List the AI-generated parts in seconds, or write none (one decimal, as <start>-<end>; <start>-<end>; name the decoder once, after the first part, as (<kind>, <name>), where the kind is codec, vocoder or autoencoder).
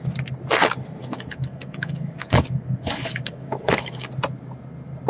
1.0-4.1 (codec, DAC)